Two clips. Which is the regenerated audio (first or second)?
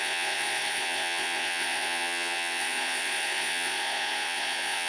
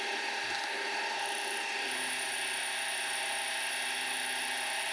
first